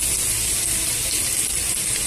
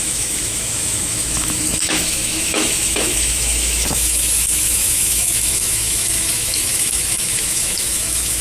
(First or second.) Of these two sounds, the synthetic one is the second